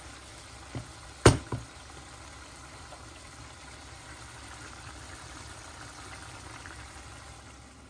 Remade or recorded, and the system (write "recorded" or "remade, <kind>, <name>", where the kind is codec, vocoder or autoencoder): remade, vocoder, BigVGAN v2